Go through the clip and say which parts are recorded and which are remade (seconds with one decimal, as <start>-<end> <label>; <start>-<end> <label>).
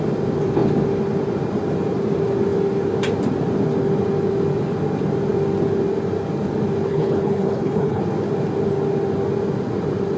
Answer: 0.0-6.9 recorded; 6.9-8.0 remade; 8.0-10.2 recorded